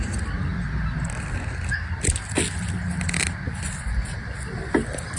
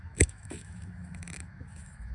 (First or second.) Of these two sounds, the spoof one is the second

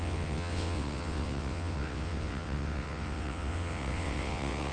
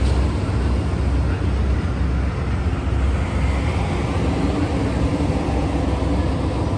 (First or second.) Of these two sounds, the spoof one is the first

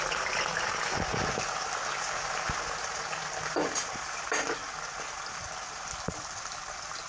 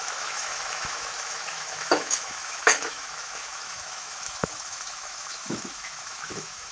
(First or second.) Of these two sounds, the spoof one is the second